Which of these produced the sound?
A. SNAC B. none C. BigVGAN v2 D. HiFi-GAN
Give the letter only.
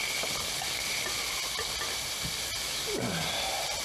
B